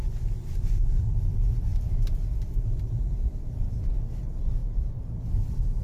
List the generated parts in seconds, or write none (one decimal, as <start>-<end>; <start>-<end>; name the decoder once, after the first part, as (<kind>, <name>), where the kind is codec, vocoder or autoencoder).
4.6-5.2 (vocoder, BigVGAN v2)